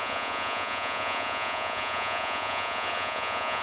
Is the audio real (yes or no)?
no